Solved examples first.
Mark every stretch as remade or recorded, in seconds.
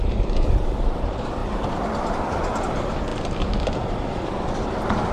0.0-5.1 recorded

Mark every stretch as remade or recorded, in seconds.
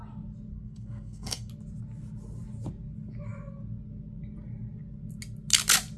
0.0-0.5 recorded; 0.5-1.5 remade; 1.5-6.0 recorded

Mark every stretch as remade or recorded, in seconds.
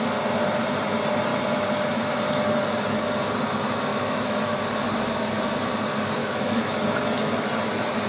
0.0-3.9 recorded; 3.9-4.6 remade; 4.6-6.2 recorded; 6.2-6.8 remade; 6.8-8.1 recorded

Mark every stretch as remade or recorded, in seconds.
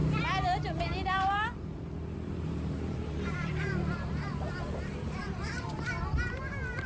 0.0-4.1 remade; 4.1-5.2 recorded; 5.2-6.4 remade; 6.4-6.9 recorded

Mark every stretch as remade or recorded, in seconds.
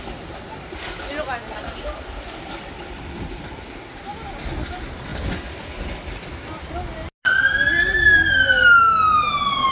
0.0-9.7 recorded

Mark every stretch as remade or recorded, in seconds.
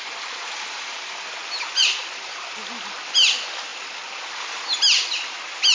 0.0-5.7 recorded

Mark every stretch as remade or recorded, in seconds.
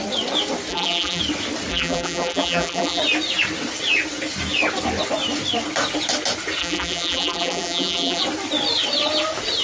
0.0-0.7 recorded; 0.7-1.2 remade; 1.2-1.7 recorded; 1.7-3.0 remade; 3.0-6.6 recorded; 6.6-8.2 remade; 8.2-9.6 recorded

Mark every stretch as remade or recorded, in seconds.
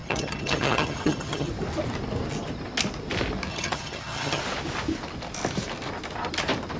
0.0-1.5 remade; 1.5-3.5 recorded; 3.5-4.4 remade; 4.4-6.8 recorded